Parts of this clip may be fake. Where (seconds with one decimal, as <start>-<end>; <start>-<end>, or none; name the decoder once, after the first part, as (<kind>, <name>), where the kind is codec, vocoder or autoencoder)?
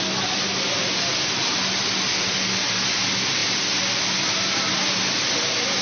none